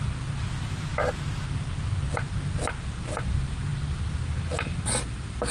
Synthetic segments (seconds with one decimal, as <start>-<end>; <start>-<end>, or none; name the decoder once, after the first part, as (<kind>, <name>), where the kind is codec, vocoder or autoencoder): 0.0-0.9 (vocoder, BigVGAN v2); 1.9-5.5